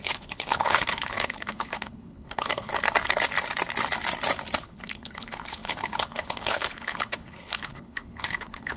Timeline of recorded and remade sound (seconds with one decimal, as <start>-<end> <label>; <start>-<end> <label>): 0.0-2.7 remade; 2.7-4.6 recorded; 4.6-8.8 remade